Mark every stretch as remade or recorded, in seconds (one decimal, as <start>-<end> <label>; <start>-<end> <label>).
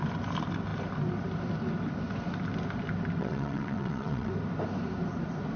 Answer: 0.0-3.2 recorded; 3.2-4.3 remade; 4.3-5.6 recorded